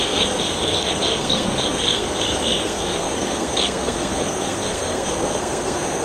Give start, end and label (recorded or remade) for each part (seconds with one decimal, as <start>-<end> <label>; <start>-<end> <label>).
0.0-6.0 remade